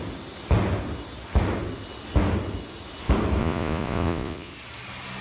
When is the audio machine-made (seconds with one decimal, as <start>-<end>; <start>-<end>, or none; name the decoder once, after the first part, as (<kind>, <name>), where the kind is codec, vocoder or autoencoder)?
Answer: 3.4-4.5 (vocoder, Vocos)